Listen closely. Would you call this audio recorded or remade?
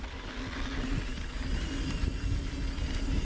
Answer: recorded